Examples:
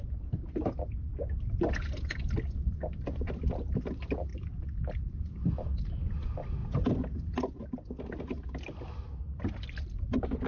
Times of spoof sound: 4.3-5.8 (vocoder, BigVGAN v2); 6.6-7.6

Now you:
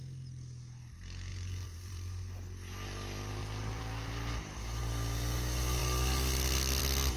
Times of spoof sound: 1.3-2.2 (vocoder, BigVGAN v2); 3.4-4.8

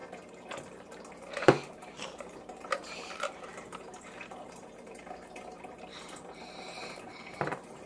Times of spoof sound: 1.1-7.9 (vocoder, BigVGAN v2)

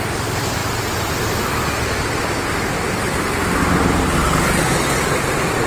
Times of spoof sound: 0.6-1.6 (vocoder, BigVGAN v2); 3.6-4.6

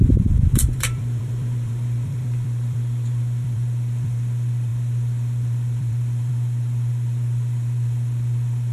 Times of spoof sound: 0.0-8.7 (vocoder, BigVGAN v2)

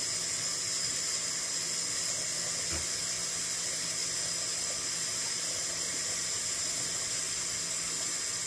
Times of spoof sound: 5.9-7.2 (vocoder, BigVGAN v2)